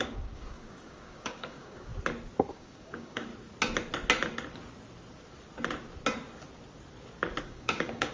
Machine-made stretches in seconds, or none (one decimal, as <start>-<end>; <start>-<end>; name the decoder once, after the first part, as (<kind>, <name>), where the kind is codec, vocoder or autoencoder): 0.0-1.9 (codec, DAC); 2.5-3.3; 7.4-8.1

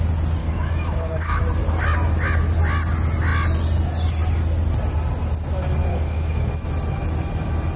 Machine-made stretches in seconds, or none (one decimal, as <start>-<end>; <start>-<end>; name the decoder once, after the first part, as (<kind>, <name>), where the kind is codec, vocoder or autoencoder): 0.4-1.4 (codec, DAC); 5.9-6.5

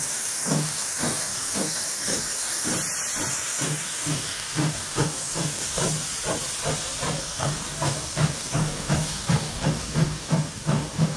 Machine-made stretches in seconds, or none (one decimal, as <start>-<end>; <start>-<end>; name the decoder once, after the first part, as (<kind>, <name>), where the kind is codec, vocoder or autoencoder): 0.0-2.7 (codec, DAC); 3.3-5.8; 7.2-11.2

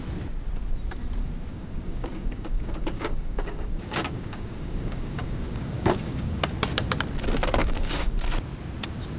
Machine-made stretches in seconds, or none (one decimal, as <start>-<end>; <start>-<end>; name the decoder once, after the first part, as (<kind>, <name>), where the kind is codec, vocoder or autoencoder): 1.5-6.4 (codec, DAC); 7.6-8.1

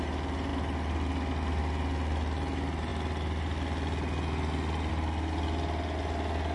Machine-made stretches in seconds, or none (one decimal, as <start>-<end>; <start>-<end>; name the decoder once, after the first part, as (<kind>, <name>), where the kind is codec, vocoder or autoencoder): none

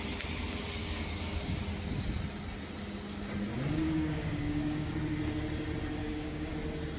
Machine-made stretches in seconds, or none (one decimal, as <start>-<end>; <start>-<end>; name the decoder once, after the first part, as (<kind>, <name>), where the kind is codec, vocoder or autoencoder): 0.8-1.6 (codec, DAC); 3.8-4.9; 6.0-6.5

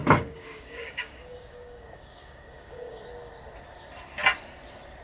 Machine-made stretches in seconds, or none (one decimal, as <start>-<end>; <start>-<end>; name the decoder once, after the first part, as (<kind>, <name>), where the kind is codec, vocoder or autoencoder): 0.0-3.0 (codec, DAC)

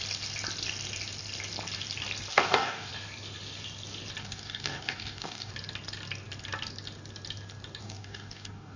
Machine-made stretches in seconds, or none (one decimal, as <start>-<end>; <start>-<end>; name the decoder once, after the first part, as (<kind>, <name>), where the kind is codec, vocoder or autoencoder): 2.3-2.9 (codec, DAC); 4.2-5.5; 7.8-8.8